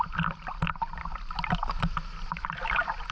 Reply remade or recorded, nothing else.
recorded